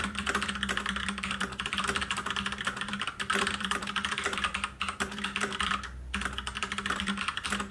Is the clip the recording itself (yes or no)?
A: no